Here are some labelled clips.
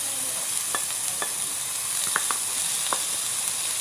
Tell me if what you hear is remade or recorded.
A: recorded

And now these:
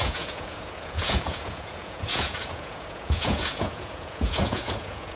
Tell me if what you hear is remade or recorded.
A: remade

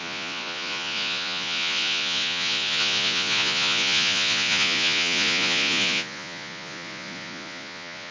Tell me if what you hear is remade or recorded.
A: remade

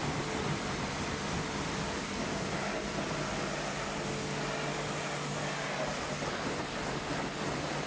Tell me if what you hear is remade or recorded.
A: recorded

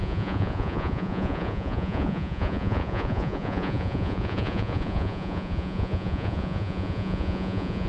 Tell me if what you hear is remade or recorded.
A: remade